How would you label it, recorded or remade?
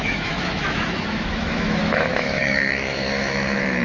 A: remade